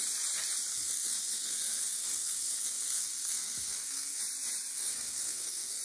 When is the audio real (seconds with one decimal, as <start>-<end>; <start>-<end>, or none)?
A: 0.0-0.7; 4.2-4.7

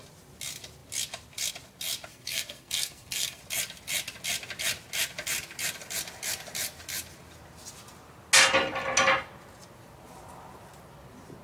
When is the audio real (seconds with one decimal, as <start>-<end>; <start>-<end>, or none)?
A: 0.0-2.1; 3.4-11.4

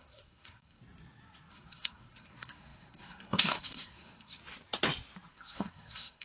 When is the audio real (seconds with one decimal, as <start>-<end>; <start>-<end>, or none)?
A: 0.8-1.5; 4.4-5.3

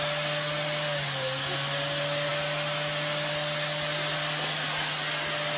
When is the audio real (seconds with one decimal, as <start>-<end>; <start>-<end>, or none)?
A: 0.0-5.6

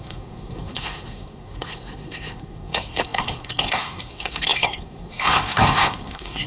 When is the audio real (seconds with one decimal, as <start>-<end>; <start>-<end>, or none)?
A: none